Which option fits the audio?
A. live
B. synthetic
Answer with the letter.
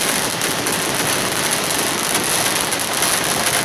A